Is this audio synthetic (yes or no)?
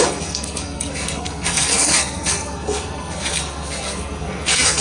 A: yes